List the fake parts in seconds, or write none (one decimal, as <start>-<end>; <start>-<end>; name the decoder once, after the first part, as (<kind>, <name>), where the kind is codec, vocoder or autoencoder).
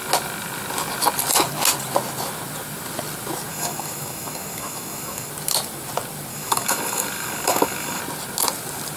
3.5-5.3 (codec, DAC); 6.3-8.0